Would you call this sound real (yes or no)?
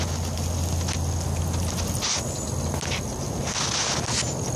yes